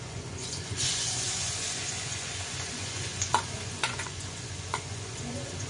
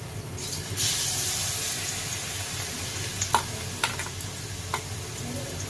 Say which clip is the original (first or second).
second